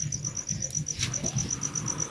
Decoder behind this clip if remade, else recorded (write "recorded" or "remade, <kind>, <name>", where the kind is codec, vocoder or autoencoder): recorded